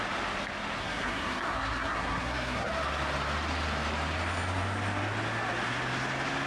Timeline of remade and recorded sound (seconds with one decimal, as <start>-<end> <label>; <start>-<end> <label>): 0.0-0.8 recorded; 0.8-2.7 remade; 2.7-6.5 recorded